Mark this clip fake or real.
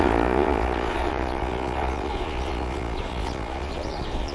fake